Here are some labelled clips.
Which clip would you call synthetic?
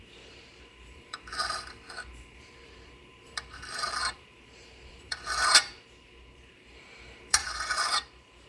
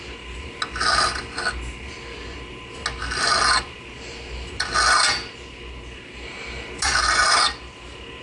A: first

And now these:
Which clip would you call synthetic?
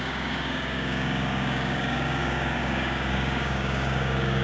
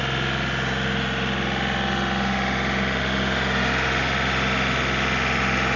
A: first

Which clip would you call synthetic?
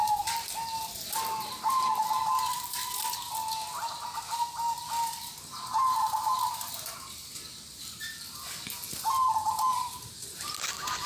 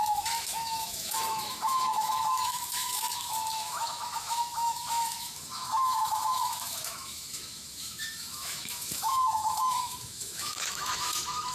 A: second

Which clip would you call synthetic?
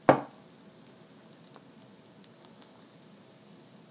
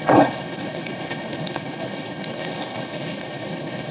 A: second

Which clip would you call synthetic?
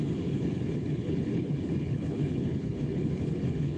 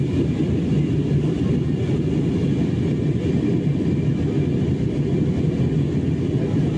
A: first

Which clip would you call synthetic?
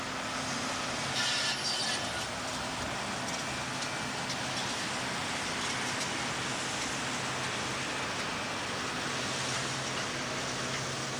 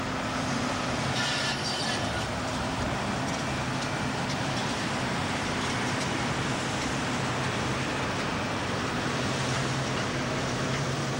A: second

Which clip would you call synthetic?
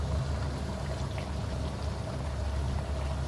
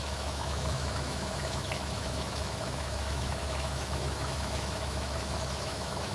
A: second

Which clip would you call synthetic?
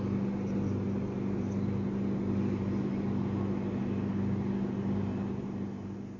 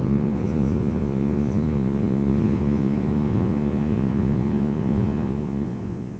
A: second